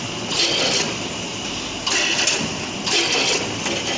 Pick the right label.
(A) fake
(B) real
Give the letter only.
B